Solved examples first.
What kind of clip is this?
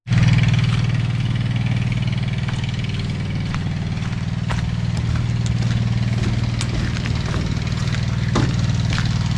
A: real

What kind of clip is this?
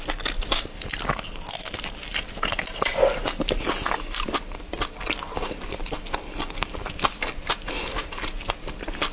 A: real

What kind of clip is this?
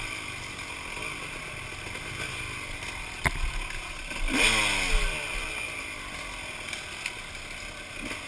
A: real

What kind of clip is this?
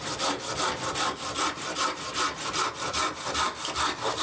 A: real